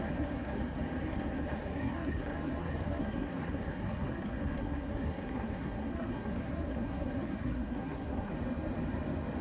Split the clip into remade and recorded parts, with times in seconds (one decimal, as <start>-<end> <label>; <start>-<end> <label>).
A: 0.0-0.6 remade; 0.6-1.1 recorded; 1.1-8.3 remade; 8.3-9.4 recorded